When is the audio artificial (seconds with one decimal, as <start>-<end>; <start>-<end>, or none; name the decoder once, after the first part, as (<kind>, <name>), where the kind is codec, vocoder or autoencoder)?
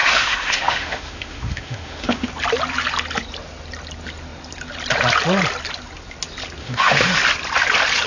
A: 0.0-2.3 (autoencoder, DAC-VAE); 6.6-7.2